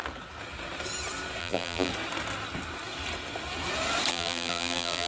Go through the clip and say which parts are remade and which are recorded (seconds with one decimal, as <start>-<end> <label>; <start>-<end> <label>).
0.0-1.4 recorded; 1.4-1.9 remade; 1.9-4.1 recorded; 4.1-5.1 remade